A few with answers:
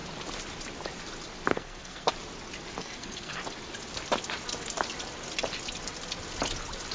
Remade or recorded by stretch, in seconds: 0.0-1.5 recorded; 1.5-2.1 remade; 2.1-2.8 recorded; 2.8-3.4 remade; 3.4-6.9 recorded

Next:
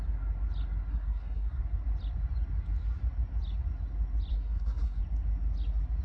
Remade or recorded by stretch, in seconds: 0.0-0.9 recorded; 0.9-1.6 remade; 1.6-4.3 recorded; 4.3-5.0 remade; 5.0-6.0 recorded

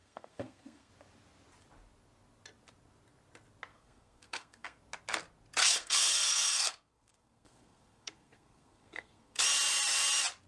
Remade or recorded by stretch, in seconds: 0.0-0.9 remade; 0.9-3.7 recorded; 3.7-4.8 remade; 4.8-5.6 recorded; 5.6-9.4 remade; 9.4-10.5 recorded

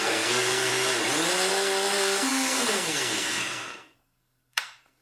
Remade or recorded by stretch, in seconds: 0.0-0.7 remade; 0.7-1.5 recorded; 1.5-5.0 remade